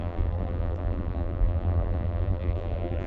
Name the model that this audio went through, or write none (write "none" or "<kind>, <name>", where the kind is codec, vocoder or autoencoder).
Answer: vocoder, BigVGAN v2